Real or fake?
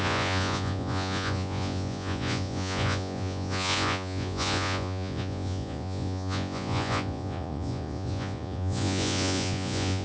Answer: fake